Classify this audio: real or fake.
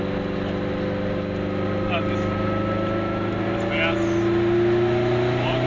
real